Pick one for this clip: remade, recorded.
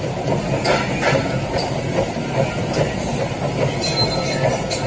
recorded